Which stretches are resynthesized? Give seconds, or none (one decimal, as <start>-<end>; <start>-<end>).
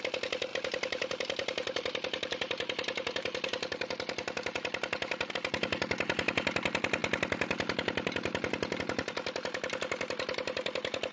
0.5-5.3